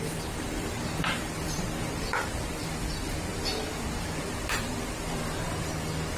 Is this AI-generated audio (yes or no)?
yes